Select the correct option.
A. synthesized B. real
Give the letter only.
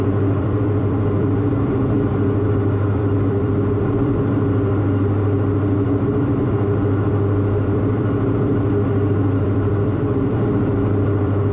A